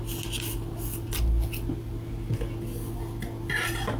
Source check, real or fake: real